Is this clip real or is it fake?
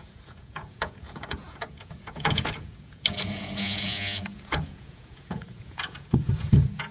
fake